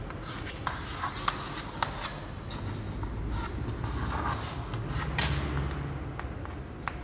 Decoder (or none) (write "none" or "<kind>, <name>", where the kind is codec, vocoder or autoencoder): none